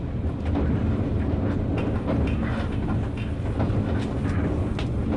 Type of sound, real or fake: real